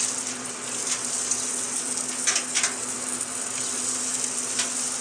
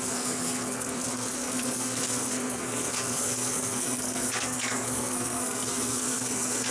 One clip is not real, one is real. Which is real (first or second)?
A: first